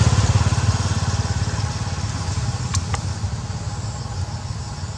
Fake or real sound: real